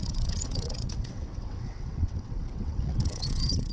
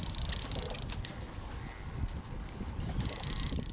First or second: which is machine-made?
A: first